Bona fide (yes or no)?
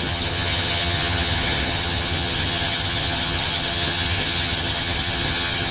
no